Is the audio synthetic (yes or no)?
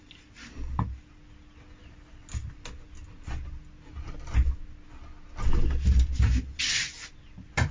no